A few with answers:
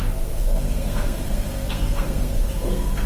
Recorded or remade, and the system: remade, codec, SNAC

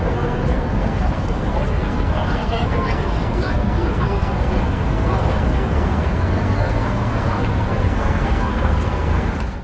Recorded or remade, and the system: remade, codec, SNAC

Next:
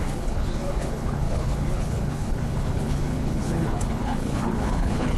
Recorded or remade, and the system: remade, codec, HILCodec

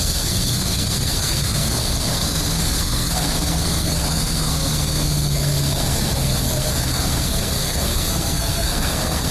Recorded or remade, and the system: remade, codec, SNAC